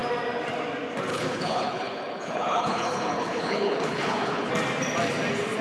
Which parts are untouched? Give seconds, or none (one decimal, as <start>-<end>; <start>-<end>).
0.0-1.1; 4.5-5.6

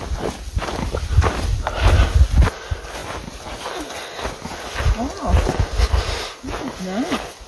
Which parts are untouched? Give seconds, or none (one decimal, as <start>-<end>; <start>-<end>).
0.0-7.5